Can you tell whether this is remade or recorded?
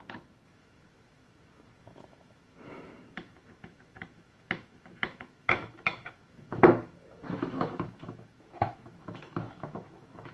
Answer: remade